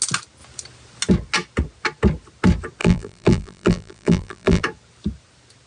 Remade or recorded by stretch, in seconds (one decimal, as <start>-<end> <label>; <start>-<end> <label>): 0.0-2.8 recorded; 2.8-4.6 remade; 4.6-5.7 recorded